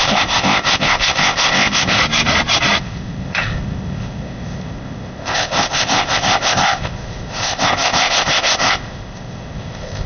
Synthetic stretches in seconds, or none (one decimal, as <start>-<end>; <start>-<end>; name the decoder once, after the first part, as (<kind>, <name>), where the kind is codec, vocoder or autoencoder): 0.0-2.0 (codec, ZipCodec); 2.8-10.1